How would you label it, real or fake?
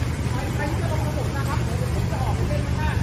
real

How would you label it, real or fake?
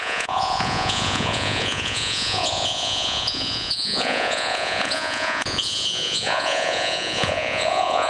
fake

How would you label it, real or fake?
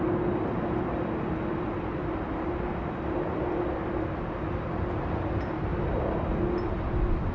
real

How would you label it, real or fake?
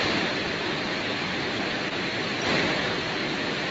real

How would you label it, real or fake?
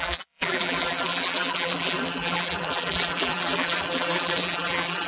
fake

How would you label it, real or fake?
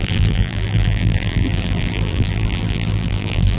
fake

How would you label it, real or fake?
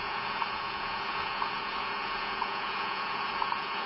fake